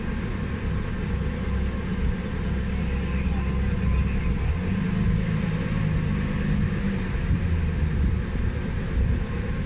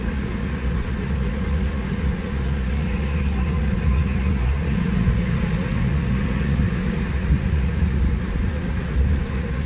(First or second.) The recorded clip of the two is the first